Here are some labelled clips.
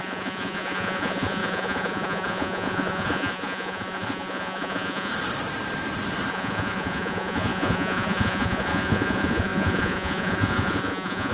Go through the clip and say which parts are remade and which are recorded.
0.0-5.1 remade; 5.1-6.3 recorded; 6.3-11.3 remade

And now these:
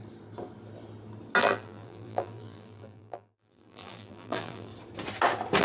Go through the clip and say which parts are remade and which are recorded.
0.0-1.4 recorded; 1.4-4.7 remade; 4.7-5.6 recorded

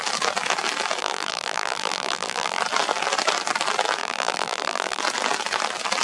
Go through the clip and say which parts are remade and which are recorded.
0.0-1.0 recorded; 1.0-2.6 remade; 2.6-4.0 recorded; 4.0-5.0 remade; 5.0-6.0 recorded

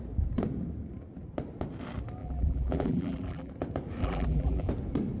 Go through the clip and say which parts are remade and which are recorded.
0.0-2.2 recorded; 2.2-3.5 remade; 3.5-4.0 recorded; 4.0-4.7 remade; 4.7-5.2 recorded

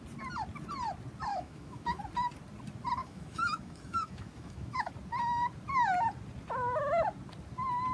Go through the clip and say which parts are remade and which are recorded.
0.0-1.3 recorded; 1.3-2.0 remade; 2.0-3.0 recorded; 3.0-4.9 remade; 4.9-7.9 recorded